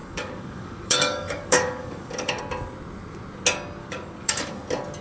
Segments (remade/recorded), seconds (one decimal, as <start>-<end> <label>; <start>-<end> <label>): 0.0-2.4 remade; 2.4-3.8 recorded; 3.8-4.5 remade; 4.5-5.0 recorded